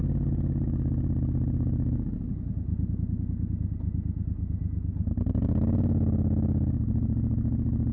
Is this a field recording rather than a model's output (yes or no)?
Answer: yes